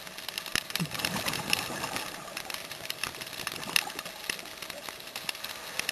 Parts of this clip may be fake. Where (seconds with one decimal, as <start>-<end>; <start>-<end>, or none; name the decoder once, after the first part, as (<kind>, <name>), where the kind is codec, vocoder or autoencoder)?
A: 0.5-3.5 (vocoder, BigVGAN v2)